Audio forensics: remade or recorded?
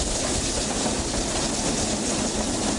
recorded